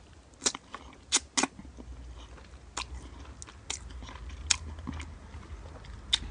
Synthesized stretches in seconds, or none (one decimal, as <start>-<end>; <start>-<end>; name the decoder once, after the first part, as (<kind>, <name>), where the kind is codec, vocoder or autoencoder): none

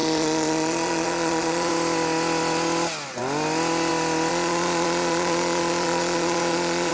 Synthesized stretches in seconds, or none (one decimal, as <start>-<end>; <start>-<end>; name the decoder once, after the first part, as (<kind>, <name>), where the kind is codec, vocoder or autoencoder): 0.0-1.7 (vocoder, Vocos); 4.3-6.9

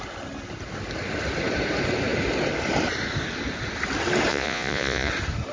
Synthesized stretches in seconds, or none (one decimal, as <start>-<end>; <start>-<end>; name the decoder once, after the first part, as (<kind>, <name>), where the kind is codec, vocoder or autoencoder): 4.3-5.1 (vocoder, Vocos)

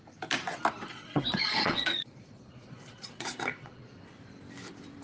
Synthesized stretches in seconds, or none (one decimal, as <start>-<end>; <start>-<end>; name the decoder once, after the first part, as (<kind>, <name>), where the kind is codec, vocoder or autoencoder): 0.9-3.9 (vocoder, Vocos)

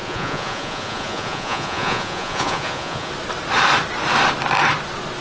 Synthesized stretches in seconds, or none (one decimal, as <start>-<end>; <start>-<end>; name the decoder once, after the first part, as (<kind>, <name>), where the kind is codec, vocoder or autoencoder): 0.0-3.1 (vocoder, Vocos)

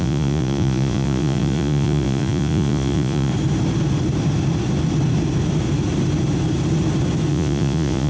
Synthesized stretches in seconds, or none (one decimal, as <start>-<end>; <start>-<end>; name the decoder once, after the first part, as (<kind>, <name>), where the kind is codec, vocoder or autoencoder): 0.0-3.3 (vocoder, Vocos); 7.3-8.1

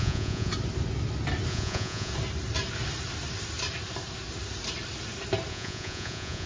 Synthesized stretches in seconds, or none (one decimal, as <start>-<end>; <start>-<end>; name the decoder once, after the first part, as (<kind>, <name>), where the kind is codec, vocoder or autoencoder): 0.0-0.5 (vocoder, Vocos); 1.5-2.1; 5.5-6.5